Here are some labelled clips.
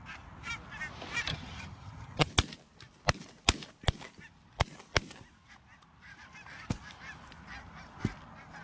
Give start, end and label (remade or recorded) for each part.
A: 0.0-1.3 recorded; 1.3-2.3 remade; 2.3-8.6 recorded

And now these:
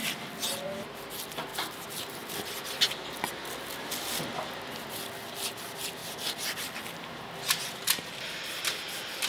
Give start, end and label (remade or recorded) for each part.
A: 0.0-9.3 recorded

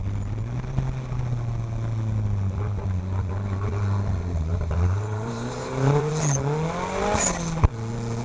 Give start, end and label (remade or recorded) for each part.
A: 0.0-4.5 recorded; 4.5-6.1 remade; 6.1-8.2 recorded

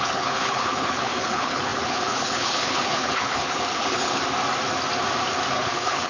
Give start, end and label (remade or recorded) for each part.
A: 0.0-4.2 remade; 4.2-5.5 recorded; 5.5-6.1 remade

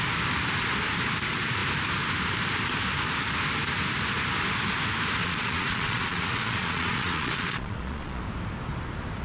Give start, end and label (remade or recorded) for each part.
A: 0.0-5.2 recorded; 5.2-8.2 remade; 8.2-9.2 recorded

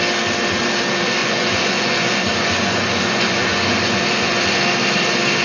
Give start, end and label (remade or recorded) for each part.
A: 0.0-1.2 recorded; 1.2-4.4 remade; 4.4-5.4 recorded

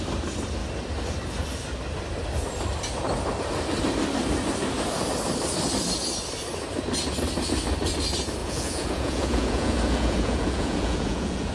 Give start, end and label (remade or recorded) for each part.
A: 0.0-8.4 recorded; 8.4-11.5 remade

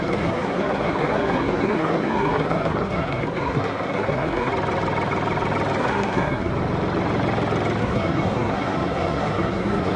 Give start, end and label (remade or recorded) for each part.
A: 0.0-4.5 remade; 4.5-5.8 recorded; 5.8-6.5 remade; 6.5-7.8 recorded; 7.8-10.0 remade